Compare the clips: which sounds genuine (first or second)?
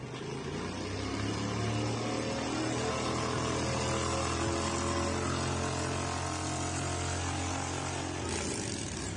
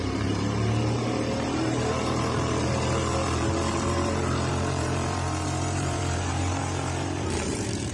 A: first